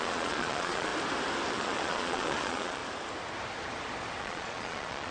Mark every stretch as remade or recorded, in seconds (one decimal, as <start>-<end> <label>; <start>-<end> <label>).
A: 0.0-0.9 remade; 0.9-1.5 recorded; 1.5-2.8 remade; 2.8-4.2 recorded; 4.2-5.1 remade